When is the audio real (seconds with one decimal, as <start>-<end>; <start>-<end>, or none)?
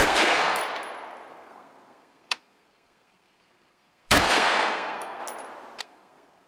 0.6-1.3; 5.2-5.8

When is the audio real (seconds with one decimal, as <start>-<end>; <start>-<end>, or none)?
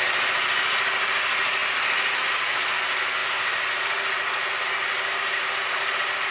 0.0-6.3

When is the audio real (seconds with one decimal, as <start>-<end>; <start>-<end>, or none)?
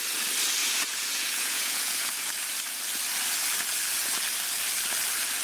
0.0-0.6; 2.3-5.4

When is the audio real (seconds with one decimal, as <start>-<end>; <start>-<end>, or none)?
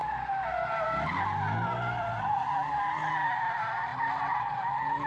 0.0-5.1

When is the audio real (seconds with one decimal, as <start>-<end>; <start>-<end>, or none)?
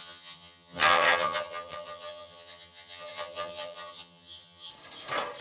4.7-5.4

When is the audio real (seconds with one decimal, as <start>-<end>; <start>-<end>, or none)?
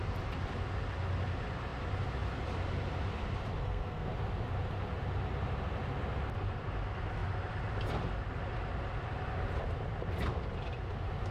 0.0-3.6; 4.1-11.3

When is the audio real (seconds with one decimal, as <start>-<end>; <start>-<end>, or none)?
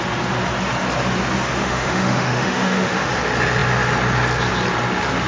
0.0-1.6; 3.1-5.3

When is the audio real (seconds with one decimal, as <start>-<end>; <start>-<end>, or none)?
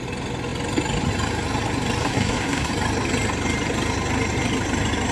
0.0-2.0; 2.7-5.1